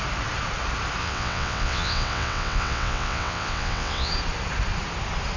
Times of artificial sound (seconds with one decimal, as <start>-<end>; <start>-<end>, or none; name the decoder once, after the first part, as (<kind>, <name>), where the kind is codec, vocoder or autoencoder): 1.0-4.1 (vocoder, WaveNeXt)

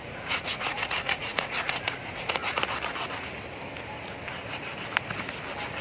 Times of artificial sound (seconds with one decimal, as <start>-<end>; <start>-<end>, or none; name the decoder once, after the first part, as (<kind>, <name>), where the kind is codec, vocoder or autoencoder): 0.0-2.4 (vocoder, Vocos)

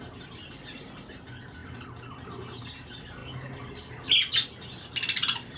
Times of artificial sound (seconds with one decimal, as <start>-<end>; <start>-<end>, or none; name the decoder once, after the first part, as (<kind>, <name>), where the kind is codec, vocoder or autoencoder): none

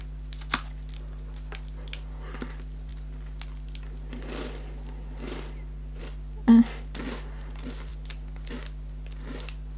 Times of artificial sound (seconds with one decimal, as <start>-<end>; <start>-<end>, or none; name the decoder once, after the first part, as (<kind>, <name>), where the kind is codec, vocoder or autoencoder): none

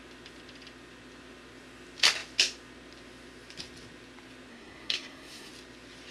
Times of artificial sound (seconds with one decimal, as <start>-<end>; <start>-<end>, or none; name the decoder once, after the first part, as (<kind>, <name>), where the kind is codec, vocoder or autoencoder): 4.5-5.5 (codec, SNAC)

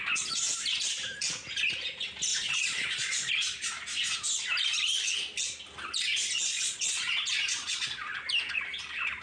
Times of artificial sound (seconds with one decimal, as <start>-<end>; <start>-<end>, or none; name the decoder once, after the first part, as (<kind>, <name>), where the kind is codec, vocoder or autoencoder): 2.3-3.3 (vocoder, Vocos); 6.5-8.2

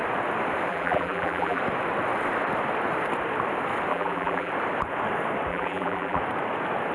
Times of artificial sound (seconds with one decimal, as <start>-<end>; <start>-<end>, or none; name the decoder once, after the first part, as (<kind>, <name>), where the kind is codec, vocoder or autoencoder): 0.7-1.6 (vocoder, BigVGAN v2); 3.9-4.5; 5.5-6.2